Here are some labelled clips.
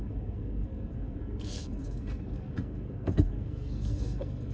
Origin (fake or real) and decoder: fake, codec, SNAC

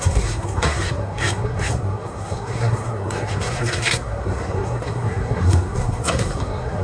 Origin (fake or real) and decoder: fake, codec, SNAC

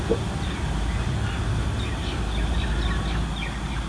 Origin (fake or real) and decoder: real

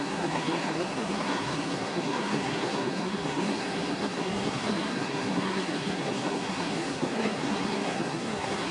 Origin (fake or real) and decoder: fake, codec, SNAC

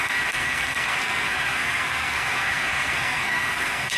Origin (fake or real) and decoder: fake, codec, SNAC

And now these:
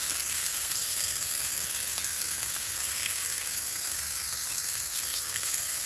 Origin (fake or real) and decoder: fake, codec, SNAC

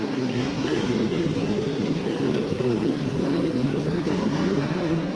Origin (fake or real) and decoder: fake, codec, SNAC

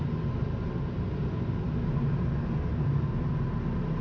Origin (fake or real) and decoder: real